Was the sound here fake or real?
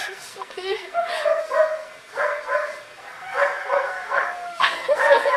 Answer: fake